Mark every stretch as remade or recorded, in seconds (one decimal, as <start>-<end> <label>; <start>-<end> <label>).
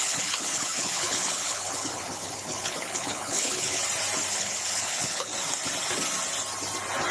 0.0-3.8 remade; 3.8-4.3 recorded; 4.3-5.3 remade; 5.3-7.1 recorded